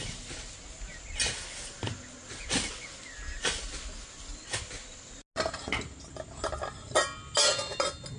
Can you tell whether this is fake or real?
real